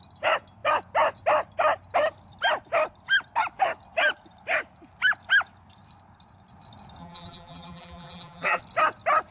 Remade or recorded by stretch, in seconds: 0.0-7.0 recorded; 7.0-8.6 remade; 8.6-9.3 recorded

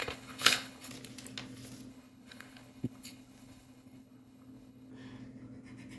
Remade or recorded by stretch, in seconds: 0.0-0.9 remade; 0.9-1.9 recorded; 1.9-4.9 remade; 4.9-6.0 recorded

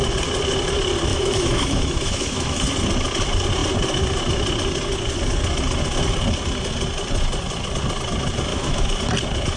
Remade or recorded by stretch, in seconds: 0.0-1.1 recorded; 1.1-2.6 remade; 2.6-8.5 recorded; 8.5-9.0 remade; 9.0-9.6 recorded

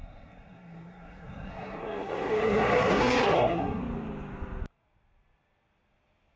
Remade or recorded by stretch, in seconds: 0.0-3.8 remade; 3.8-6.4 recorded